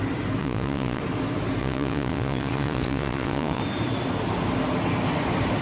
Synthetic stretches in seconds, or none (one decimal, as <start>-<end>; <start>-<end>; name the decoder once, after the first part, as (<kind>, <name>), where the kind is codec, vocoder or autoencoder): 0.4-1.0 (vocoder, WaveNeXt); 1.6-3.6